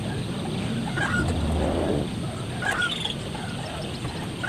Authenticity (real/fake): real